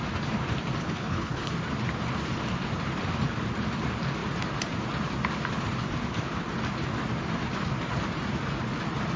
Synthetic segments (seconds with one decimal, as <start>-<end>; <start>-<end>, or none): 0.8-1.5